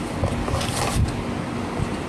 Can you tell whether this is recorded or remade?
recorded